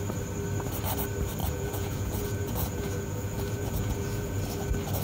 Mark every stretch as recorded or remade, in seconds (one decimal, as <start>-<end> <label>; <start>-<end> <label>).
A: 0.0-1.4 recorded; 1.4-4.4 remade; 4.4-5.0 recorded